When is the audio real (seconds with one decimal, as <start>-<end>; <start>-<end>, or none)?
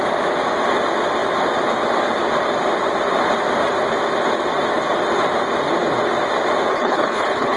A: 0.0-6.7